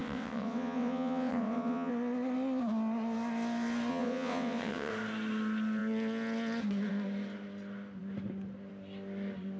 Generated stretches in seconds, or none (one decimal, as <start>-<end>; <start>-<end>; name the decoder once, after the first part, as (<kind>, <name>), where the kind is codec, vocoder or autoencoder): 0.0-1.9 (vocoder, WaveNeXt); 3.9-4.9